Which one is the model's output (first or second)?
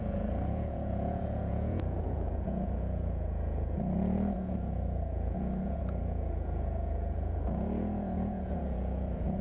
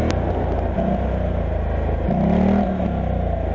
first